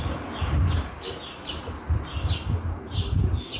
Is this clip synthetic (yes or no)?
no